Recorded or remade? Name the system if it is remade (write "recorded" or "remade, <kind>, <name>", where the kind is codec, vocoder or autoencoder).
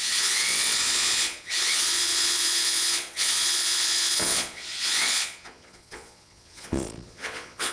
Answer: remade, vocoder, Vocos